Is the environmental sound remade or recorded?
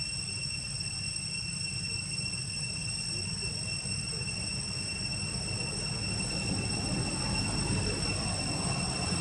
recorded